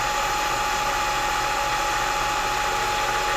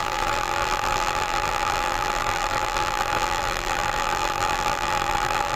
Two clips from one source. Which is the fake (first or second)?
second